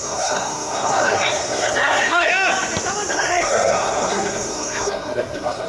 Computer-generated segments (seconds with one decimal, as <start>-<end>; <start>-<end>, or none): 0.0-2.3; 3.1-5.7